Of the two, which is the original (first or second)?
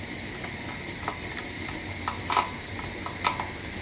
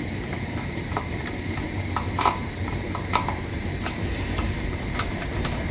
first